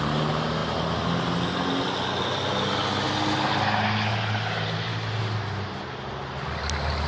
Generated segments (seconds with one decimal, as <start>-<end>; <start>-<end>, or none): none